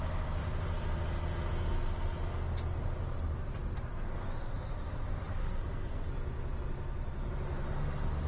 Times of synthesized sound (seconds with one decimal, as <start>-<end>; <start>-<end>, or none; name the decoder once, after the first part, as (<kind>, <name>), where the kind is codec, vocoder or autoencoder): 5.4-6.1 (codec, SNAC)